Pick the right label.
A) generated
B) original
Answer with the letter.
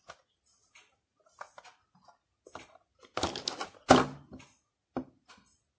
B